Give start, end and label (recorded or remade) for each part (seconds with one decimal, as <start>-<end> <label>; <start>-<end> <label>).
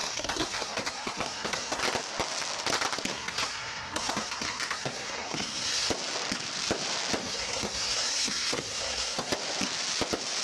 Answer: 0.0-1.8 remade; 1.8-3.1 recorded; 3.1-5.9 remade; 5.9-7.2 recorded; 7.2-9.3 remade; 9.3-10.4 recorded